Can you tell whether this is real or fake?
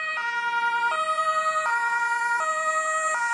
fake